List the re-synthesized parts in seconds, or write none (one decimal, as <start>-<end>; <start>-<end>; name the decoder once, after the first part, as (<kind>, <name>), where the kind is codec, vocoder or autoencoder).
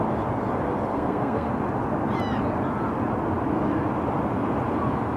0.9-1.5 (codec, SNAC)